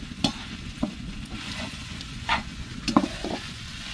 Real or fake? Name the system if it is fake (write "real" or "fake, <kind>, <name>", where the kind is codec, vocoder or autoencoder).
fake, vocoder, Vocos